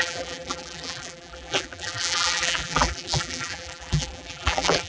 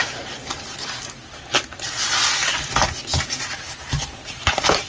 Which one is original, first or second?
second